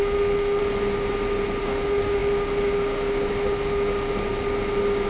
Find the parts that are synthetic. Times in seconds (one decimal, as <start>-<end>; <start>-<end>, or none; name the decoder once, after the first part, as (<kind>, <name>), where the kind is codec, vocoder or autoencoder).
0.0-0.6 (autoencoder, DAC-VAE); 1.6-4.2

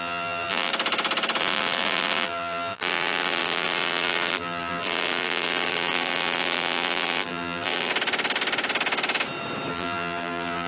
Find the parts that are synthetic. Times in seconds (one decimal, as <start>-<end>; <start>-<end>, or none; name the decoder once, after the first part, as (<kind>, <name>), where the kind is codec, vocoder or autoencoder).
0.0-0.7 (vocoder, BigVGAN v2); 1.4-7.9; 9.7-10.7

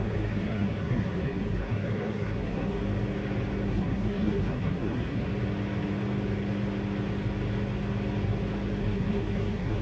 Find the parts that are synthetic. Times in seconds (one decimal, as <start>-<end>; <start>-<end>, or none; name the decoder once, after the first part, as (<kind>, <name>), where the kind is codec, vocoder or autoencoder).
0.0-2.8 (codec, SNAC); 3.7-5.3; 8.8-9.8

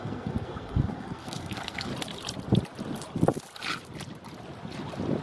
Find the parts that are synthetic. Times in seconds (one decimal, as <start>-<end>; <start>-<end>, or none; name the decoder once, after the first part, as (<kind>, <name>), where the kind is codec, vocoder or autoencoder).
0.0-1.9 (codec, SNAC)

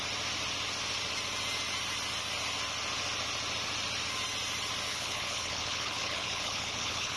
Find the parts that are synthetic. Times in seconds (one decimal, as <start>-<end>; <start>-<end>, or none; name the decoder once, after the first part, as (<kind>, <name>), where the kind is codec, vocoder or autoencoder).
4.9-7.2 (codec, HILCodec)

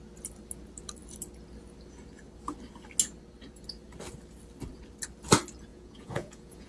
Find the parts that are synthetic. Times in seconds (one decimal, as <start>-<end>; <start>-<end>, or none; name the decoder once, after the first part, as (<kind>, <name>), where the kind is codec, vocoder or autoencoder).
5.7-6.7 (vocoder, Vocos)